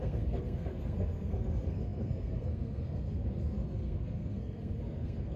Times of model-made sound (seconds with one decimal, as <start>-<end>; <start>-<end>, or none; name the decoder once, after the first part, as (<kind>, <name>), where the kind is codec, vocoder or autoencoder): 0.0-5.4 (codec, SNAC)